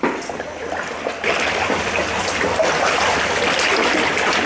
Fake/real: real